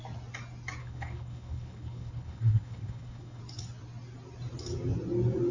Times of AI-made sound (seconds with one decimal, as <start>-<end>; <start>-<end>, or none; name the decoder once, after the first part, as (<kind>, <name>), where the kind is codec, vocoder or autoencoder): 0.8-3.4 (codec, HILCodec)